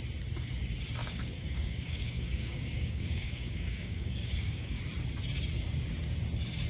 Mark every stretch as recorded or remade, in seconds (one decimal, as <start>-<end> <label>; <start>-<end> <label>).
0.0-1.0 recorded; 1.0-4.8 remade; 4.8-6.7 recorded